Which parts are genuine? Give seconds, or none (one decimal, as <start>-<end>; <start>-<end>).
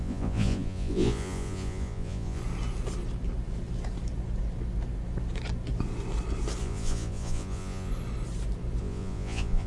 2.4-6.6; 7.9-8.8